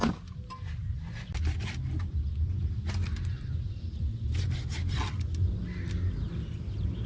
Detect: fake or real real